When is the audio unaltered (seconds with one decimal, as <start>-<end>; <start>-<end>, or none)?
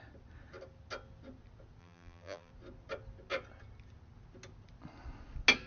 0.0-1.8; 2.5-5.7